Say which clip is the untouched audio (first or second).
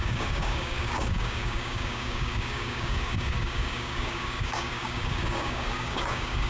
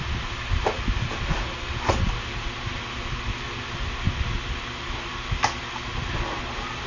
second